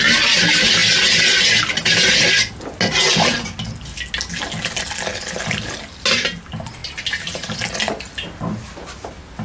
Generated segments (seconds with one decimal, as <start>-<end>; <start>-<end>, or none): 5.1-5.8